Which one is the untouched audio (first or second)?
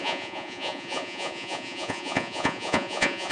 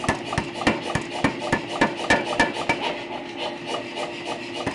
second